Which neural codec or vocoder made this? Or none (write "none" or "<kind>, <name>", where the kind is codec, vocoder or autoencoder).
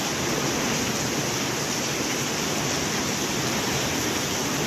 none